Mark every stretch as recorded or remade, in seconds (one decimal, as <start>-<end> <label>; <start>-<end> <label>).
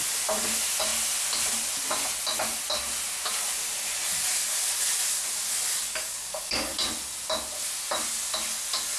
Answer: 0.0-5.8 recorded; 5.8-6.7 remade; 6.7-9.0 recorded